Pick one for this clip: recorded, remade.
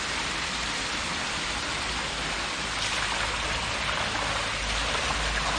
recorded